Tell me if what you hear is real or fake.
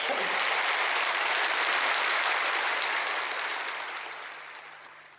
real